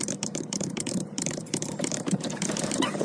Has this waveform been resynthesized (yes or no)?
yes